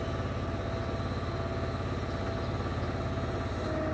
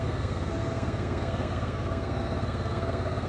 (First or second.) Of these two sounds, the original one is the first